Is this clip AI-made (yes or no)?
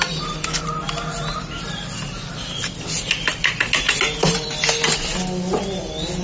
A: no